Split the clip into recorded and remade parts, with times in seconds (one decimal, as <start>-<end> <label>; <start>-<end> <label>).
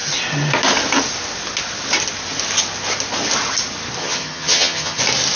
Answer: 0.0-4.0 recorded; 4.0-5.0 remade; 5.0-5.4 recorded